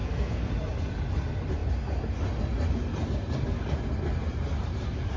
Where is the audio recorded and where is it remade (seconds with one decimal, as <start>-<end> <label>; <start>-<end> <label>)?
0.0-0.5 remade; 0.5-5.2 recorded